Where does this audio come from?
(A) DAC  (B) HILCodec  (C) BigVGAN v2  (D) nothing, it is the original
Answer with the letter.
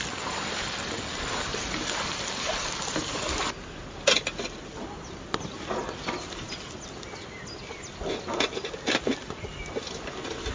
D